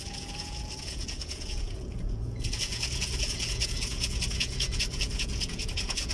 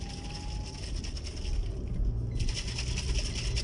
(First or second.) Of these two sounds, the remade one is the first